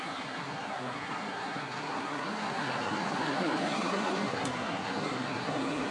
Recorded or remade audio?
remade